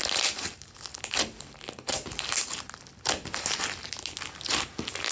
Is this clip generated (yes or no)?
no